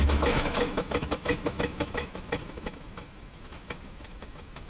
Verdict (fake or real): fake